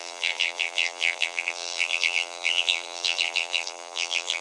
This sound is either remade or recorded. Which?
remade